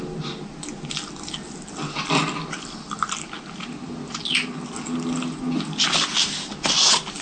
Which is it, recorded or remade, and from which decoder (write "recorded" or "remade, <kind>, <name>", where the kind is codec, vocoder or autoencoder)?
recorded